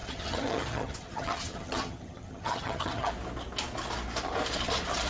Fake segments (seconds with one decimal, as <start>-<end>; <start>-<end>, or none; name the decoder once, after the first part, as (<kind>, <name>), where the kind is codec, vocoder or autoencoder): 0.0-3.1 (vocoder, HiFi-GAN)

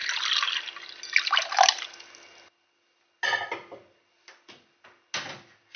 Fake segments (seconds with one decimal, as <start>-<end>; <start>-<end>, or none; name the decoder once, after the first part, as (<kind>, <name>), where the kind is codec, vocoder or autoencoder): none

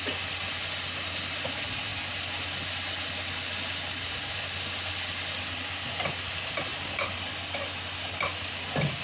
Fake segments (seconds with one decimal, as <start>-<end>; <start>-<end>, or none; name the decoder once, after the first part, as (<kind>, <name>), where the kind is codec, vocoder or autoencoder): none

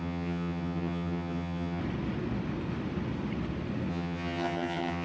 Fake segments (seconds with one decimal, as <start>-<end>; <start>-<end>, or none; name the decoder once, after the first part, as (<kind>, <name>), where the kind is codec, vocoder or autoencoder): 0.0-1.8 (vocoder, HiFi-GAN); 3.9-5.0

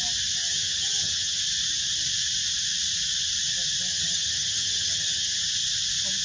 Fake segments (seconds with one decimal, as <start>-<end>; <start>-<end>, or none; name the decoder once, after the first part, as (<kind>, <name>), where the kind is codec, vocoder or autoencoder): 0.4-1.4 (vocoder, HiFi-GAN); 3.9-5.4

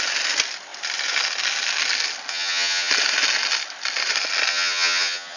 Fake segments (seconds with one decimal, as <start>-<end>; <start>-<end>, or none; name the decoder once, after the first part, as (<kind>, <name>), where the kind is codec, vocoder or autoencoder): 2.3-2.9 (vocoder, HiFi-GAN); 4.5-5.4